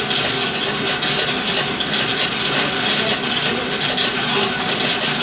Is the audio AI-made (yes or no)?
no